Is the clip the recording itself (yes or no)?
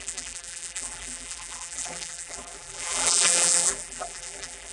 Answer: no